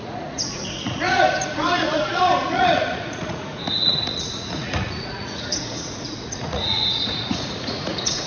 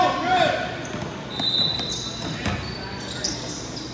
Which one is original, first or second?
second